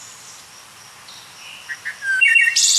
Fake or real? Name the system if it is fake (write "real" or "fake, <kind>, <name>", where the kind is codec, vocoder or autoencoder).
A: real